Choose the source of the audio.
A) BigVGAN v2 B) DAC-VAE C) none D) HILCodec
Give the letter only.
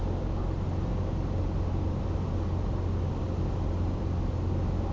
C